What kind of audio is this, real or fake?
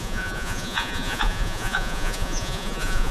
fake